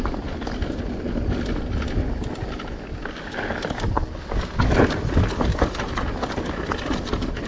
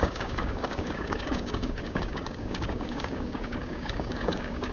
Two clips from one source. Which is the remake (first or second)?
second